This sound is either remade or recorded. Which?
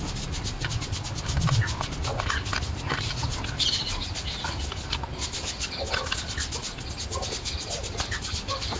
recorded